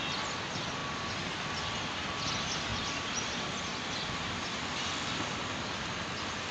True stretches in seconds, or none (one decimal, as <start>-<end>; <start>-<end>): 0.0-6.5